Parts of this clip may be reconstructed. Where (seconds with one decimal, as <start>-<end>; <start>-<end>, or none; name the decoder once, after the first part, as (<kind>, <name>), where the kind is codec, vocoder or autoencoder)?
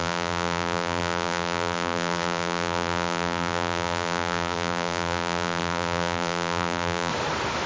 0.0-7.1 (vocoder, BigVGAN v2)